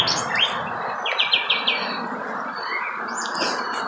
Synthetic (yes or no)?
no